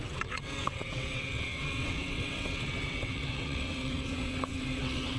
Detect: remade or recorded remade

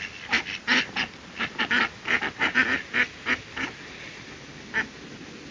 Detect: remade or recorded recorded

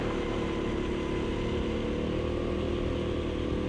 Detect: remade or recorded recorded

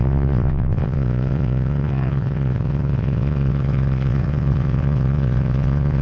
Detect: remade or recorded remade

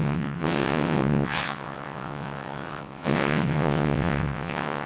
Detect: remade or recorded remade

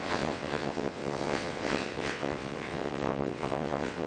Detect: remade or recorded remade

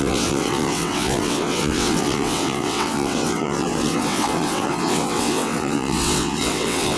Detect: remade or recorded remade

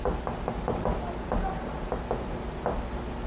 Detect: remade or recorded recorded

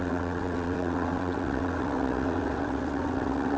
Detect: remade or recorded remade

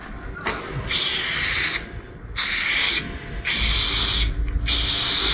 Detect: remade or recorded recorded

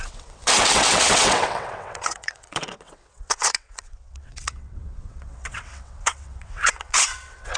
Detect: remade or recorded remade